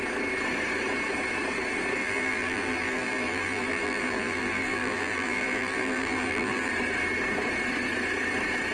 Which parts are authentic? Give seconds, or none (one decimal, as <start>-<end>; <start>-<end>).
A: 0.0-2.0; 6.7-8.7